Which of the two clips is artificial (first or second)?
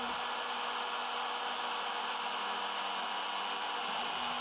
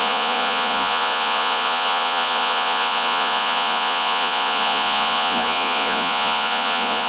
second